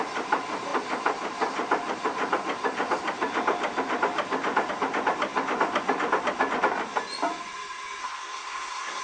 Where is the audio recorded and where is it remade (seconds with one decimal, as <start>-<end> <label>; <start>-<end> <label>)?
0.0-8.0 recorded; 8.0-9.0 remade